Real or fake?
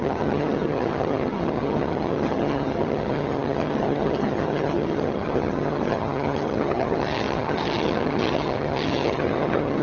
fake